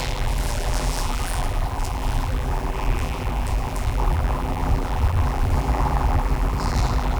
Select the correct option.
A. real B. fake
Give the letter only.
B